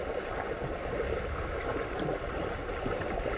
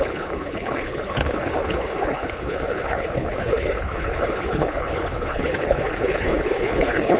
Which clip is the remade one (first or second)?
second